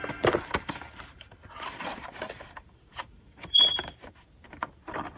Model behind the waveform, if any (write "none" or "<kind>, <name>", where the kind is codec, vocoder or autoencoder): vocoder, BigVGAN v2